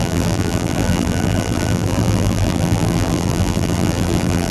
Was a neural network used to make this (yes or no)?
yes